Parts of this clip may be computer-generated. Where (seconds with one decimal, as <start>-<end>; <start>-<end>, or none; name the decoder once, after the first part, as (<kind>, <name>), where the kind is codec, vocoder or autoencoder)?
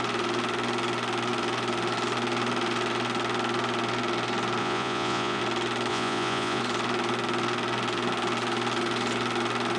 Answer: 4.6-5.4 (vocoder, Vocos); 5.9-6.6